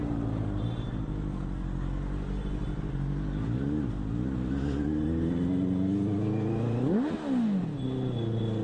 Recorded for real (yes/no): yes